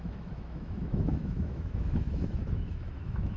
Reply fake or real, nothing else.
fake